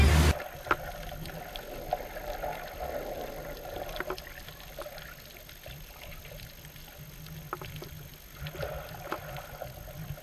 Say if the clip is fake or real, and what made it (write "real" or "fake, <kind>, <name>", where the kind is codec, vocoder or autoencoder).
real